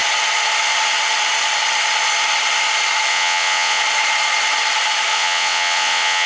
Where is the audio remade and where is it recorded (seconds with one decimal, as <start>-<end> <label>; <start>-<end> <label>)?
0.0-3.1 recorded; 3.1-3.8 remade; 3.8-5.1 recorded; 5.1-6.3 remade